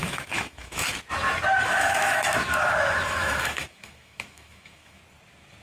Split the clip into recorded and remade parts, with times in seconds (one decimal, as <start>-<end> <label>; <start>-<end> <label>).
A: 0.0-0.9 remade; 0.9-1.6 recorded; 1.6-5.0 remade; 5.0-5.6 recorded